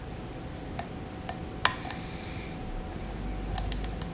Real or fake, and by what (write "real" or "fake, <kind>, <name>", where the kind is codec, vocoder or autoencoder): real